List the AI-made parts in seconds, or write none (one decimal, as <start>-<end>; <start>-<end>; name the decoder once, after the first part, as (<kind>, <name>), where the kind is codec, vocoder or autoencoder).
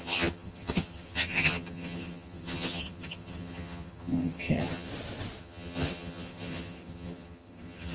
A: 0.0-4.9 (vocoder, HiFi-GAN); 5.4-7.9